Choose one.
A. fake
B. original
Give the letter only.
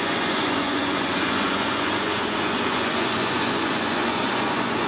A